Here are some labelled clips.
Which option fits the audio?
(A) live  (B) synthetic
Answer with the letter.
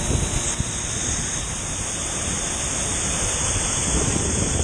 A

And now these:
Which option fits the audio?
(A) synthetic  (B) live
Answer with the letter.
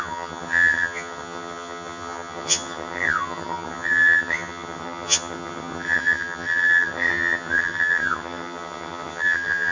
A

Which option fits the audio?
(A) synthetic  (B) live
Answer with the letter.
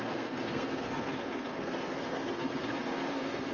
A